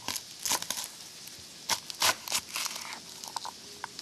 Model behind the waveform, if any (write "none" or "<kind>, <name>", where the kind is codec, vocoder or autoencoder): none